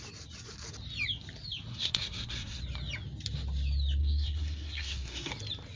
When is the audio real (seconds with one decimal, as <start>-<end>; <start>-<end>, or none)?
0.0-1.7; 2.6-4.0; 5.3-5.8